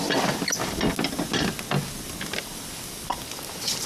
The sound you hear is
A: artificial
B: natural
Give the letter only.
B